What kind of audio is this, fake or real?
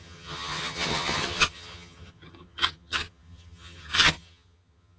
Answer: fake